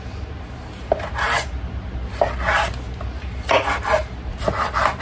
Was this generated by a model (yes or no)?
no